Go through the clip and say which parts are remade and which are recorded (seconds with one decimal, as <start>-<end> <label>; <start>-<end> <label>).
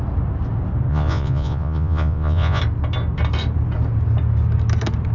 0.0-0.9 recorded; 0.9-2.6 remade; 2.6-5.1 recorded